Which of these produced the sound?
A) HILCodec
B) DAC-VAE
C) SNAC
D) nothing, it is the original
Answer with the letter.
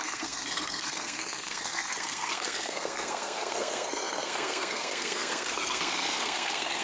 C